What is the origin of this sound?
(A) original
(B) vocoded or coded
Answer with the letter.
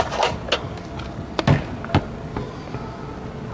A